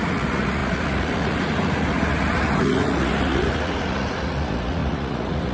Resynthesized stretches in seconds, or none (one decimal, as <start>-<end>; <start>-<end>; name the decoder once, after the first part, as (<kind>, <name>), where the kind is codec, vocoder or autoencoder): 0.0-5.5 (vocoder, Vocos)